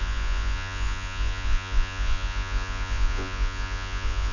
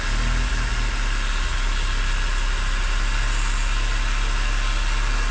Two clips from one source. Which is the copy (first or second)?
first